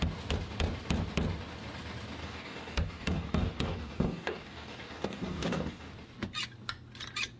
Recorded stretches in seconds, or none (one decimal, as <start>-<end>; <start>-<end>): 0.0-2.2; 5.9-7.4